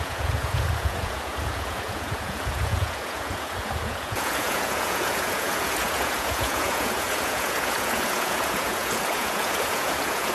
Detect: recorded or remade remade